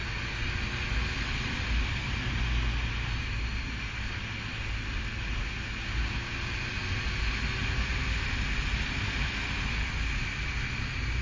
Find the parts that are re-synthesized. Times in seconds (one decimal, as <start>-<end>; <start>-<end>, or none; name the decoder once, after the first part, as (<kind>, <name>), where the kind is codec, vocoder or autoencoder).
none